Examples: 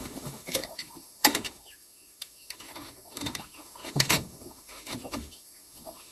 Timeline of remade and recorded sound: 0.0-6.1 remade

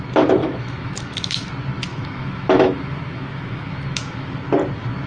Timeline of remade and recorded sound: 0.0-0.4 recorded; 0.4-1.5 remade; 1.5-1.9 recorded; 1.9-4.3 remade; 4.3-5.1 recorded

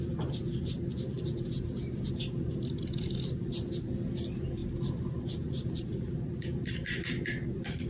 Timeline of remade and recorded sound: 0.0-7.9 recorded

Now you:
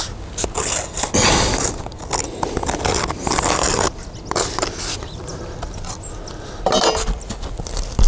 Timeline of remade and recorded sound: 0.0-8.1 recorded